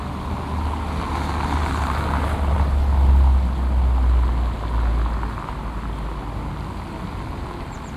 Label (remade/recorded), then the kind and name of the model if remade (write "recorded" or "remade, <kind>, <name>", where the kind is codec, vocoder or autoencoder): recorded